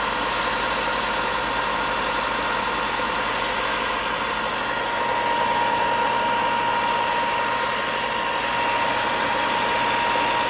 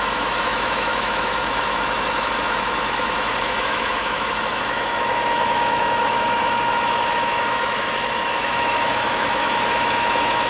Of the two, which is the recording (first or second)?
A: first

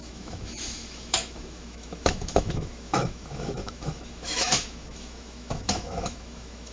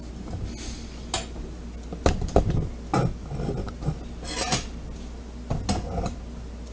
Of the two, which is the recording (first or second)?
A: second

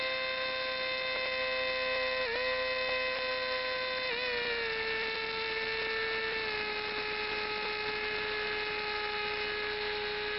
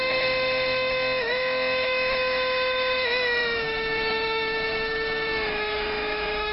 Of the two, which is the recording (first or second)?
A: first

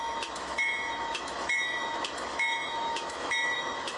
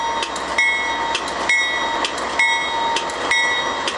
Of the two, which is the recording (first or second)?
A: second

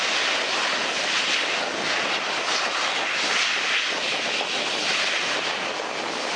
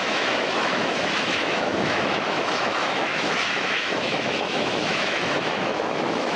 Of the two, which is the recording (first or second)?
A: first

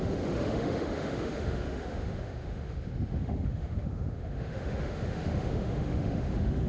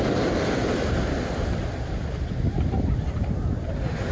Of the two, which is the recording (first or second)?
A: second